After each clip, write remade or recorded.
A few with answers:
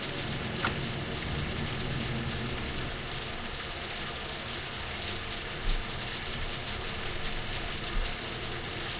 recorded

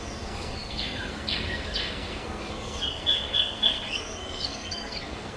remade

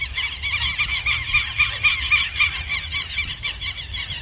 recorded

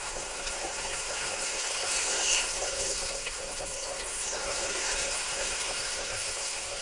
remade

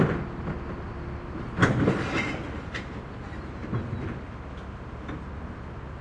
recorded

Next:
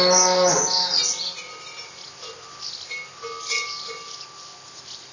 recorded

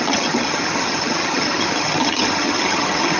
remade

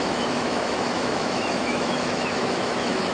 remade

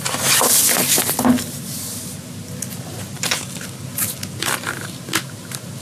recorded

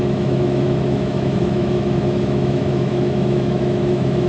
remade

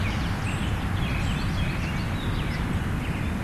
remade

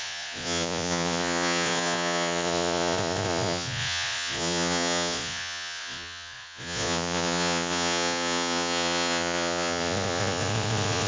remade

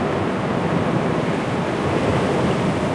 recorded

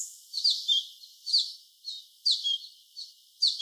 recorded